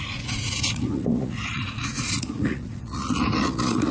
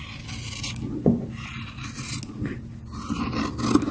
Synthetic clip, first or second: first